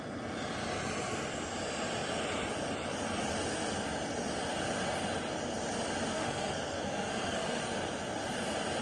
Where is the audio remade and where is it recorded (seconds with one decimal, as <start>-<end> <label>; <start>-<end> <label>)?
0.0-6.1 recorded; 6.1-7.6 remade; 7.6-8.8 recorded